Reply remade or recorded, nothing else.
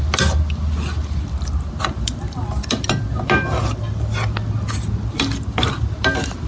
recorded